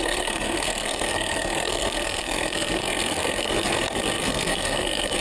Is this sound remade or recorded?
remade